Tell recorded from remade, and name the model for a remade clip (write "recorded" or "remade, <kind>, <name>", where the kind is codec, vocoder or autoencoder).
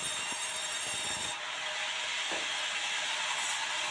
recorded